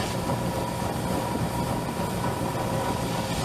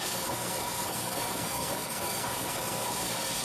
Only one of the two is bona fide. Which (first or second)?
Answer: first